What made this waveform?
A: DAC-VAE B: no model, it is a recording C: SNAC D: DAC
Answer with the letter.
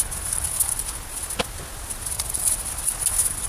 B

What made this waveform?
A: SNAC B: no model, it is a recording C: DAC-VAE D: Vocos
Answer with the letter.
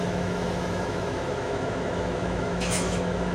C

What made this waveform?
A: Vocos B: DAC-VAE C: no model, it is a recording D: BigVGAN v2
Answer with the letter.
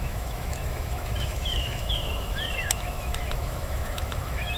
B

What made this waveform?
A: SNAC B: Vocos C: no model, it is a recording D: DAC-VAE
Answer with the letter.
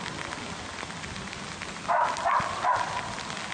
C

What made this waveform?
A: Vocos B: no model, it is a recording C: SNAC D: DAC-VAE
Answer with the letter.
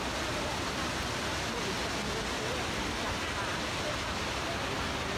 B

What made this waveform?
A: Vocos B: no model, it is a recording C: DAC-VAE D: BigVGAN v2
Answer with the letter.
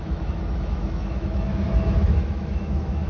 C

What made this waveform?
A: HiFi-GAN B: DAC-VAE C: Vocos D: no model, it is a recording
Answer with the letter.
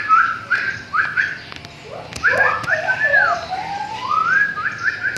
D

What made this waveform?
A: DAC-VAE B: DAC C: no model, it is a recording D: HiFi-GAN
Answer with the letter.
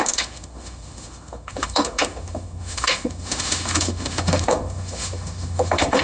A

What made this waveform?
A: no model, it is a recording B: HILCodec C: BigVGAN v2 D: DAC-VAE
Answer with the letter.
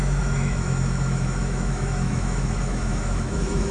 D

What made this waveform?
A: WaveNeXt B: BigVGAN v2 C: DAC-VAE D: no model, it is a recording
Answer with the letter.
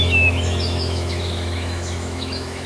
C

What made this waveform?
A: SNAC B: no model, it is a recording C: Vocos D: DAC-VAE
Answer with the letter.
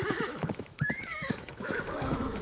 D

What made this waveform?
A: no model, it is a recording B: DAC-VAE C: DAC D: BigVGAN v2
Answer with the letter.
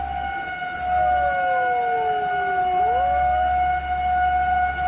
A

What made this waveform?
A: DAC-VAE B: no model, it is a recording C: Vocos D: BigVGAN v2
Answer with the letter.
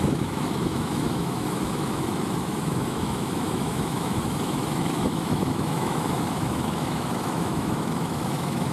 A